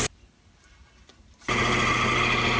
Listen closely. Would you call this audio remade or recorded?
recorded